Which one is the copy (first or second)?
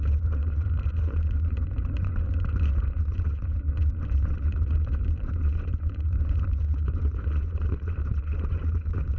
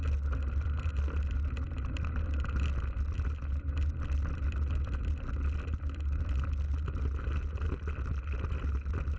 first